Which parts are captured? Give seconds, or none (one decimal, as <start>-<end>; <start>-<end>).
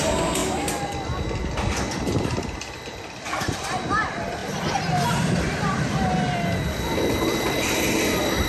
0.4-1.4